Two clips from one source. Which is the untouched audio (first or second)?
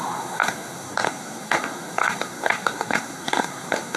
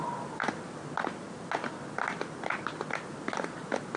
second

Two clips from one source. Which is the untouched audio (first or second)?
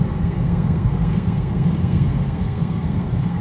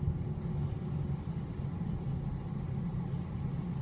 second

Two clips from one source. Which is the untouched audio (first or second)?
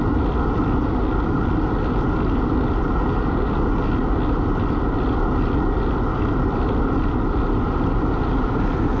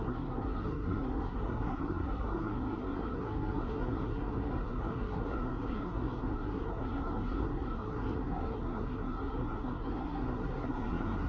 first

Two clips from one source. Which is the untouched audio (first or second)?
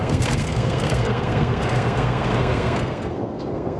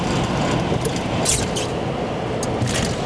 second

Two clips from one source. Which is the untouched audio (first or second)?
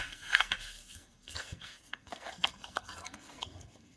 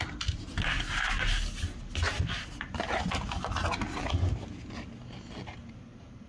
second